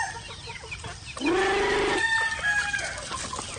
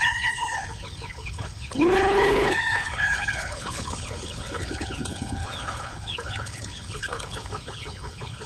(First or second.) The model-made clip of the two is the second